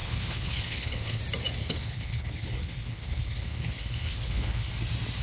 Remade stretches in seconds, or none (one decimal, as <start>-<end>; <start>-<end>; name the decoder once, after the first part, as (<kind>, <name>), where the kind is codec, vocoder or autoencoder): 0.0-1.2 (codec, HILCodec); 1.6-4.7